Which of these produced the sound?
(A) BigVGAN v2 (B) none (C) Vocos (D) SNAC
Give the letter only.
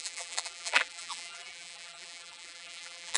A